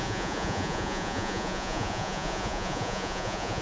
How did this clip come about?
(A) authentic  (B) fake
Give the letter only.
B